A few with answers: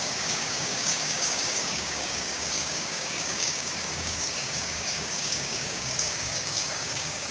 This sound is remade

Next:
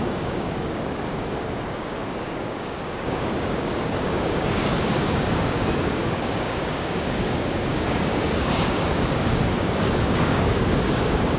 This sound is remade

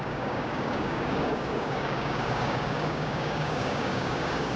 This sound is remade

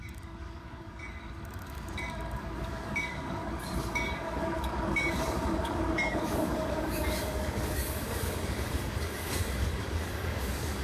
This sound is remade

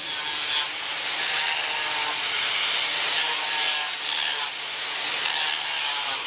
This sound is recorded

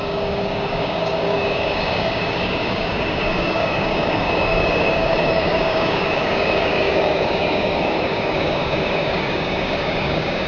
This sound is remade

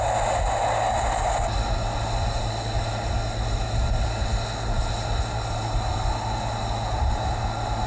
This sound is recorded